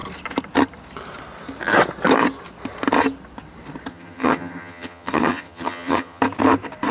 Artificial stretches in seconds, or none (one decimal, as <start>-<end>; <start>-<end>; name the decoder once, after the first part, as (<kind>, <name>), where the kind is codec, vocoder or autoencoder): 3.9-6.2 (vocoder, HiFi-GAN)